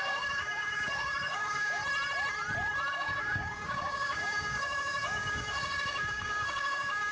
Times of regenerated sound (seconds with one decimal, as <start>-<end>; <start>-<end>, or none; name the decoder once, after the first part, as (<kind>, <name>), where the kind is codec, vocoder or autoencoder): 0.0-1.8 (codec, DAC); 2.9-7.1